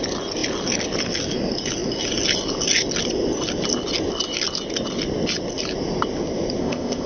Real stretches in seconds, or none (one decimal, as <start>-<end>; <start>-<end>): 0.0-6.6